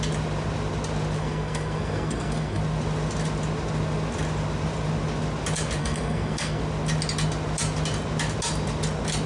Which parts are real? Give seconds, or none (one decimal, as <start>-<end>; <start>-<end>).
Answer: 0.0-1.2; 2.6-5.8; 6.6-9.3